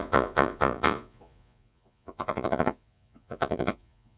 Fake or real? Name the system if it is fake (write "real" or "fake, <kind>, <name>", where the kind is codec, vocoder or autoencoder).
fake, vocoder, Vocos